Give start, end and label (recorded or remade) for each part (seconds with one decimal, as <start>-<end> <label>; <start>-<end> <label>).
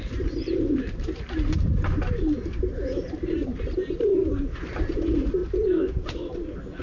0.0-5.4 remade; 5.4-6.8 recorded